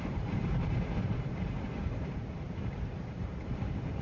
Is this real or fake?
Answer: fake